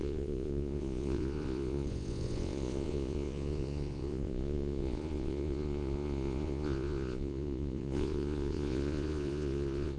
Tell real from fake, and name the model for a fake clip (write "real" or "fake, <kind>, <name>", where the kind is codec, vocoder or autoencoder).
fake, vocoder, Vocos